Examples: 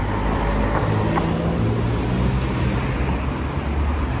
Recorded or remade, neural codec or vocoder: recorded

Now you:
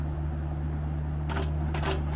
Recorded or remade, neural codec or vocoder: recorded